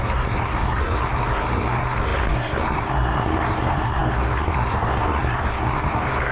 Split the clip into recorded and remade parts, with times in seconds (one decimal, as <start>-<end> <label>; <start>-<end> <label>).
0.0-6.3 remade